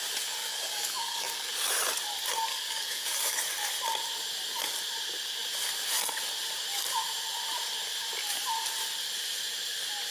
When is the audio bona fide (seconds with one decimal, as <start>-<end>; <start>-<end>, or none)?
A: 0.0-0.4; 1.5-2.5; 3.4-10.1